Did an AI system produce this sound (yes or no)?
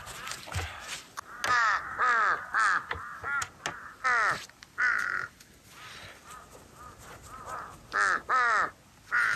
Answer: no